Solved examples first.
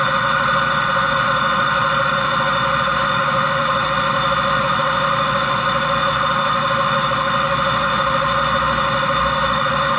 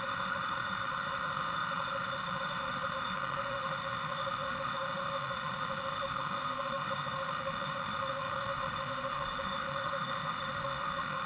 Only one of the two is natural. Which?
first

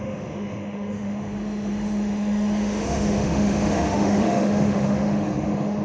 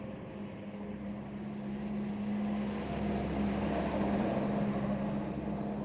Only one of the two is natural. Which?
second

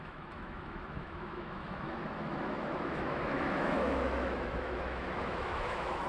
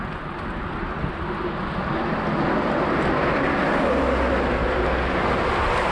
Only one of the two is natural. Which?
second